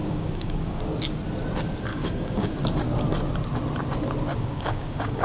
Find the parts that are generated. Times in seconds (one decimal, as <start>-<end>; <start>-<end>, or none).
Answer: 0.0-0.8; 1.9-2.5; 4.3-5.2